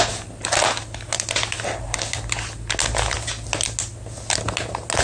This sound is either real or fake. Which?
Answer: real